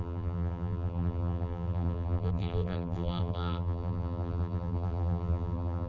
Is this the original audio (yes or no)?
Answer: no